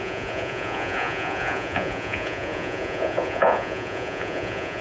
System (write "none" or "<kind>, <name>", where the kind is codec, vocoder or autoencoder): vocoder, Vocos